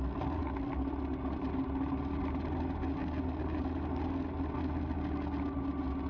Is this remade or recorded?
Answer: recorded